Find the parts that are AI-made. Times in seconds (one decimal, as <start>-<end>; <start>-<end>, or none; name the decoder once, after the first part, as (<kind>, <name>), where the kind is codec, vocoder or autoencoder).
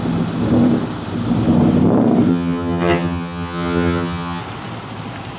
2.3-4.4 (vocoder, HiFi-GAN)